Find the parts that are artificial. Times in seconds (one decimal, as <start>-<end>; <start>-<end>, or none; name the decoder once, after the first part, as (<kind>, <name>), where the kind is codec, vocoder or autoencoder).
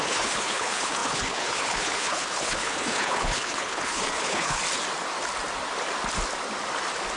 0.0-4.6 (codec, HILCodec)